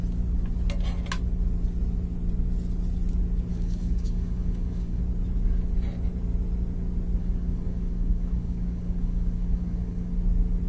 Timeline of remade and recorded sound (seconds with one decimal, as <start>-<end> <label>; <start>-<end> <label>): 0.0-3.5 recorded; 3.5-5.0 remade; 5.0-7.2 recorded; 7.2-10.1 remade; 10.1-10.7 recorded